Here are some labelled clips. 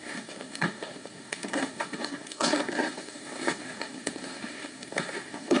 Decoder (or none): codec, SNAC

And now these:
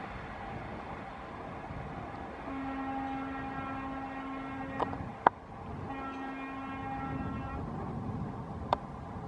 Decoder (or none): none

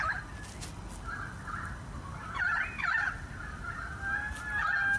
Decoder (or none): none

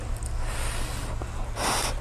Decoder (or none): none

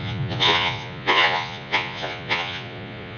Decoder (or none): vocoder, Vocos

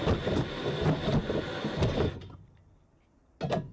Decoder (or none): none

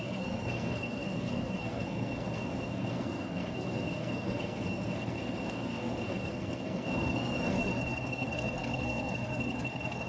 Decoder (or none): codec, SNAC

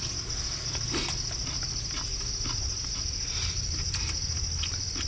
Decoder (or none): none